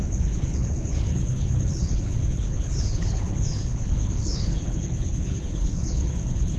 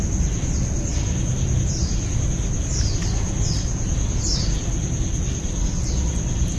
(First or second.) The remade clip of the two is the first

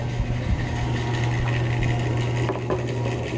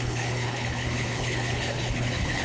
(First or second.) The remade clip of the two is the second